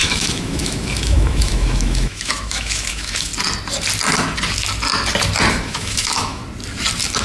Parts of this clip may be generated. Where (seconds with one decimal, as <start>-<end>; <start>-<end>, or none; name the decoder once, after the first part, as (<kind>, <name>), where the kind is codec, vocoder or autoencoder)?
0.0-3.3 (autoencoder, DAC-VAE); 5.5-6.4